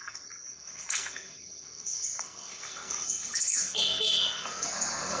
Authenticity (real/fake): fake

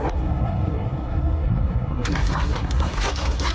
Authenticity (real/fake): fake